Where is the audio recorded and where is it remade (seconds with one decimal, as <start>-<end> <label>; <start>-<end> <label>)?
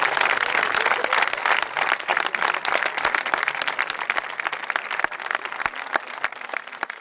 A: 0.0-7.0 recorded